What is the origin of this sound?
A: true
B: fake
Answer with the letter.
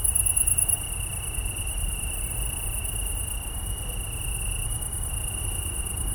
A